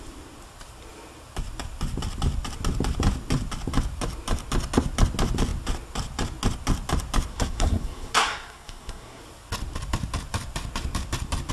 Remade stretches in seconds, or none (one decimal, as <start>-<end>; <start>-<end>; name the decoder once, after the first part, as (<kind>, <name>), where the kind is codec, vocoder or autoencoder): 7.3-9.2 (codec, SNAC)